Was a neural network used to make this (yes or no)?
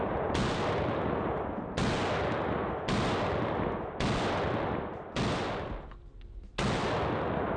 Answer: no